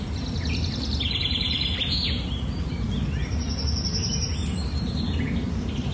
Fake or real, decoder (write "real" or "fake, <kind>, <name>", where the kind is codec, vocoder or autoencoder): real